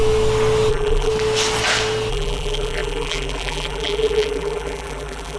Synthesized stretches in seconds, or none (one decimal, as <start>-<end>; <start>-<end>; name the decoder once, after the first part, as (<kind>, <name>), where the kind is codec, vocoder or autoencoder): 0.7-1.1 (vocoder, BigVGAN v2); 2.1-5.4